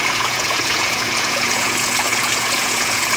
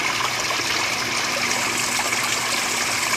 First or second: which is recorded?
second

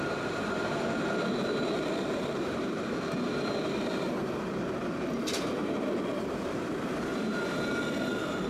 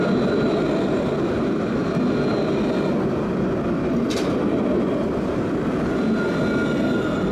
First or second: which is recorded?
second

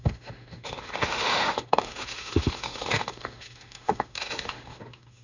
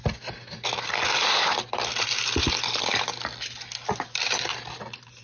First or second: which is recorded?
second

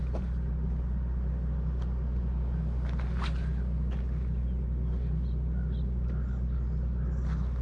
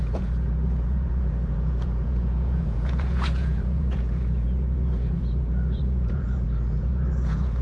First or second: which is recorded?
first